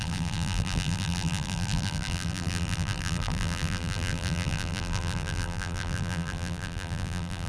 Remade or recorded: remade